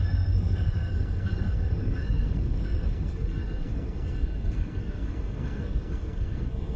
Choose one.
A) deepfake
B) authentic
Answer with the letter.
A